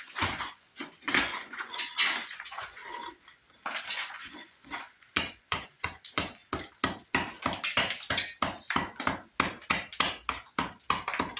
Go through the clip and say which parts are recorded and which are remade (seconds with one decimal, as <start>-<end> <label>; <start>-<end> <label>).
0.0-2.8 remade; 2.8-3.8 recorded; 3.8-6.4 remade; 6.4-11.4 recorded